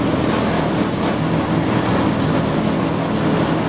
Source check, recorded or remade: recorded